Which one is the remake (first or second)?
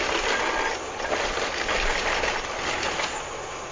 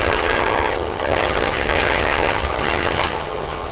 second